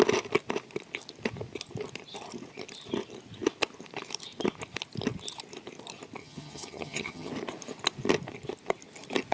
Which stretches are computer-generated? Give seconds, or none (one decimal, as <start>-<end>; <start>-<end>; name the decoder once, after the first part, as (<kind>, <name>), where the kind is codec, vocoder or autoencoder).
6.2-7.3 (vocoder, HiFi-GAN)